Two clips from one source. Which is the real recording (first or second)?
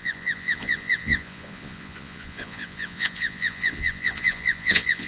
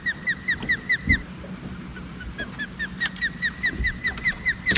second